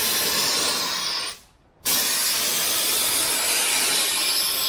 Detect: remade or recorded recorded